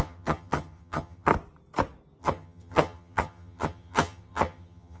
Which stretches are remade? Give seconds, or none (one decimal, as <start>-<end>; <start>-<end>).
0.0-1.3; 2.2-5.0